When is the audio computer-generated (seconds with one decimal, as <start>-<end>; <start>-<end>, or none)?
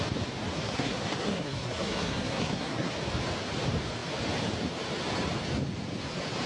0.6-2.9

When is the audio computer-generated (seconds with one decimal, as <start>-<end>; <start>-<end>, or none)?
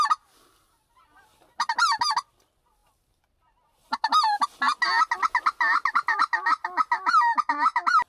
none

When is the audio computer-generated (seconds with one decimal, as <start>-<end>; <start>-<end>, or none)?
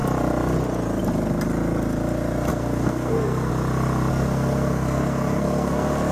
2.5-3.5; 4.1-6.1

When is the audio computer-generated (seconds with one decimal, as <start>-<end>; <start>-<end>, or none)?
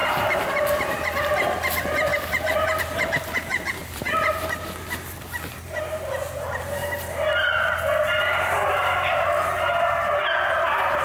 0.0-0.8; 2.1-2.8; 3.8-4.3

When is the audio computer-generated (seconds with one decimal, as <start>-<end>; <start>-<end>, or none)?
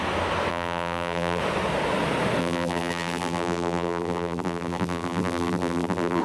0.5-1.4; 2.4-6.2